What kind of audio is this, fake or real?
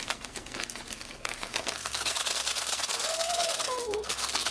fake